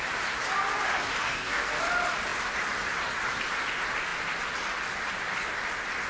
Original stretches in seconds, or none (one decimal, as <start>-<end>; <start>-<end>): 0.0-1.2; 1.8-6.1

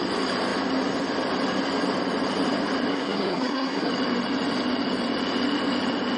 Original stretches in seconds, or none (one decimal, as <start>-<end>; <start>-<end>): 0.0-2.9; 3.9-6.2

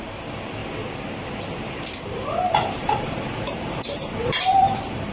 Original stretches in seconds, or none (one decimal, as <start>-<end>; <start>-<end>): 0.6-2.1